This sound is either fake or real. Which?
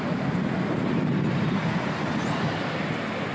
real